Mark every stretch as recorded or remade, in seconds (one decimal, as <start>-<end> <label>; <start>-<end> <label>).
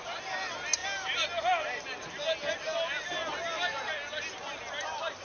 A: 0.0-5.2 recorded